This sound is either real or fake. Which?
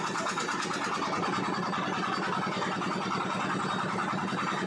real